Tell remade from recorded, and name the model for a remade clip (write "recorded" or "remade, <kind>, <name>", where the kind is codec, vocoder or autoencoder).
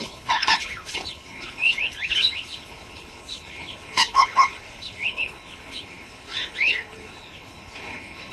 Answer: remade, codec, HILCodec